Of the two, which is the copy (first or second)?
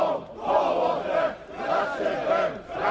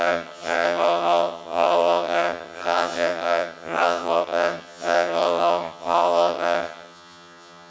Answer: second